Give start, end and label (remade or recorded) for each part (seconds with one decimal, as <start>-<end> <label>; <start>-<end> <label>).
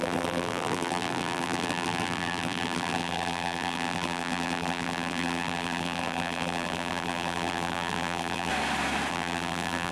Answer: 0.0-8.5 remade; 8.5-9.1 recorded; 9.1-9.9 remade